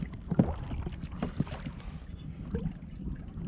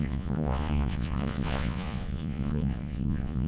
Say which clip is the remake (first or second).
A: second